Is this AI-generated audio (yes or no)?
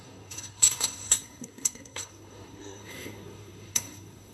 yes